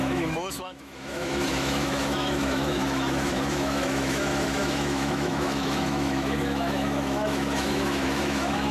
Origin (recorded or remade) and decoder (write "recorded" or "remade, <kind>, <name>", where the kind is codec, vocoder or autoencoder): remade, autoencoder, DAC-VAE